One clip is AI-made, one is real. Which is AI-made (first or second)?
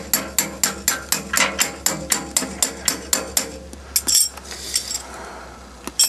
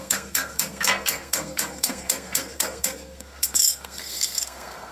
second